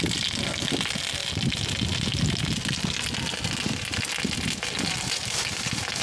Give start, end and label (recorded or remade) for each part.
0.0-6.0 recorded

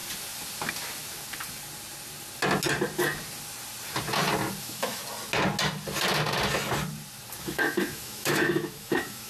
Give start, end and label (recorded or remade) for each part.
0.0-4.6 recorded; 4.6-5.0 remade; 5.0-7.4 recorded; 7.4-9.3 remade

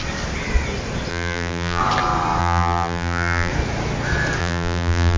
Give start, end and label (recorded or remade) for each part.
0.0-1.1 recorded; 1.1-1.8 remade; 1.8-2.4 recorded; 2.4-3.5 remade; 3.5-4.4 recorded; 4.4-5.2 remade